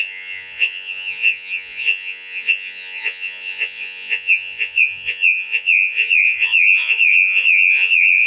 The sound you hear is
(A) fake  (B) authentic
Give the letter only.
A